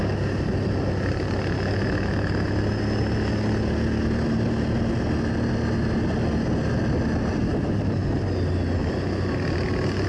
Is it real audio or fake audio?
real